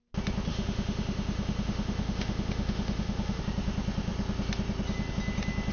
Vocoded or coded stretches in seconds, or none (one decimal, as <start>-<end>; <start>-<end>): 0.5-3.4